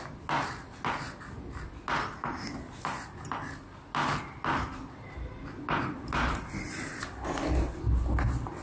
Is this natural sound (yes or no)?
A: yes